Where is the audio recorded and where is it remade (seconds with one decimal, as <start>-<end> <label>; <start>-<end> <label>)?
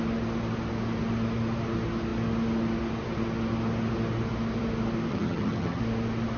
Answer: 0.0-5.1 recorded; 5.1-5.8 remade; 5.8-6.4 recorded